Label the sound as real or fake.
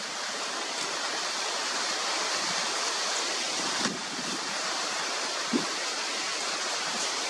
real